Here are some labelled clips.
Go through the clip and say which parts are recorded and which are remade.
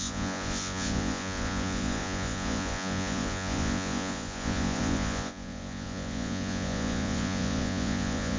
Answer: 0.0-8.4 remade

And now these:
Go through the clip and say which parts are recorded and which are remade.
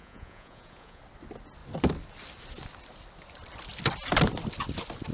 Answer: 0.0-1.0 remade; 1.0-5.1 recorded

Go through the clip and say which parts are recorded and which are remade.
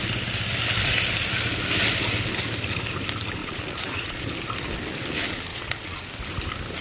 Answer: 0.0-3.4 recorded; 3.4-4.2 remade; 4.2-5.5 recorded; 5.5-6.0 remade; 6.0-6.8 recorded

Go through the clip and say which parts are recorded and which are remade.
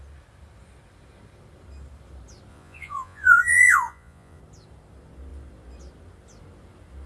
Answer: 0.0-2.5 recorded; 2.5-4.4 remade; 4.4-7.1 recorded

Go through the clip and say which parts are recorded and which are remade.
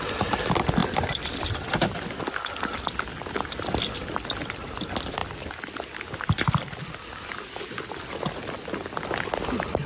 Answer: 0.0-9.9 recorded